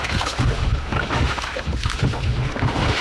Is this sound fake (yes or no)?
yes